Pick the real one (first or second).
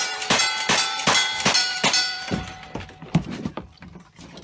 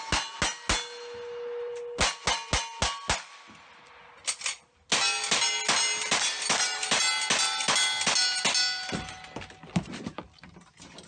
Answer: second